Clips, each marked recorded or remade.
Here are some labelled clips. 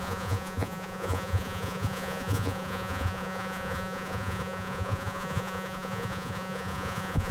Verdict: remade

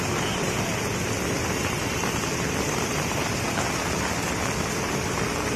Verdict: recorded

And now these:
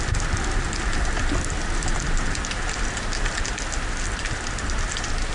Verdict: recorded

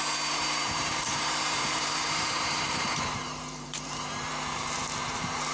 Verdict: remade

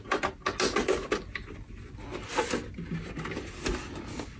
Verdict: recorded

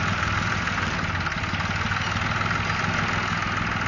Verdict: recorded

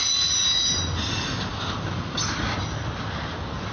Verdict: recorded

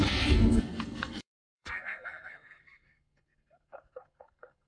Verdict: remade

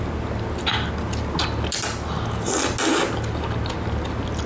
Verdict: recorded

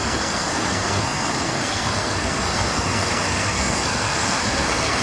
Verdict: remade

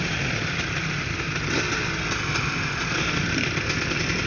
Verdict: recorded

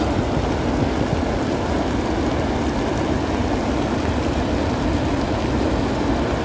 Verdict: recorded